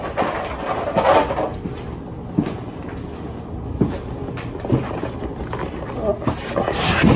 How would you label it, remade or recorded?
recorded